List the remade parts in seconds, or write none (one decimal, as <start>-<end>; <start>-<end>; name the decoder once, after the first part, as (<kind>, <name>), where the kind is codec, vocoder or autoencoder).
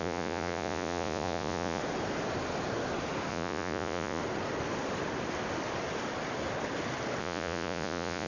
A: 0.0-1.8 (vocoder, Vocos); 3.3-4.2; 7.2-8.3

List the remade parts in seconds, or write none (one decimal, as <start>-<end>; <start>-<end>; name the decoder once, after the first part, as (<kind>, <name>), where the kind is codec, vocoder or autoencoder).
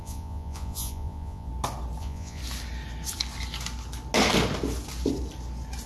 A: 0.0-1.5 (vocoder, Vocos); 2.0-2.4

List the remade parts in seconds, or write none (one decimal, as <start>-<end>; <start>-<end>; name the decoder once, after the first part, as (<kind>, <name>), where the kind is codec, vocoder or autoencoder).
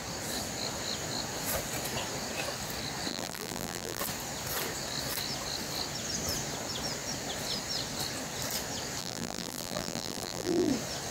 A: 3.1-4.0 (vocoder, BigVGAN v2); 9.0-10.7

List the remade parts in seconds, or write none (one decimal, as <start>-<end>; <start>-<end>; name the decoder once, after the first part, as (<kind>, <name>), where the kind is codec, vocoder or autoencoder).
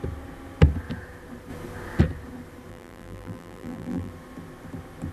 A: 2.7-4.1 (vocoder, BigVGAN v2)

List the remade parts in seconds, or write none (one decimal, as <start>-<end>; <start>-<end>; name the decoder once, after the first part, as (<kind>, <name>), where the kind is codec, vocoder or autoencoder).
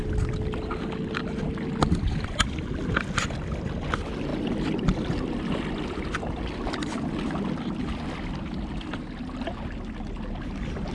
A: none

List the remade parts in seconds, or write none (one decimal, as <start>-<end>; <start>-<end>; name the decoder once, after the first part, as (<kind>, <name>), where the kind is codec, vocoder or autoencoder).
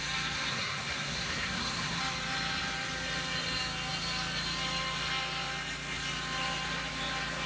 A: 0.5-2.0 (codec, SNAC)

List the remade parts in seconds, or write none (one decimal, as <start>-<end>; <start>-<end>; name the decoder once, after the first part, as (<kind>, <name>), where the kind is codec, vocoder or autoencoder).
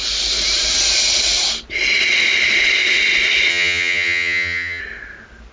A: 3.5-4.8 (vocoder, HiFi-GAN)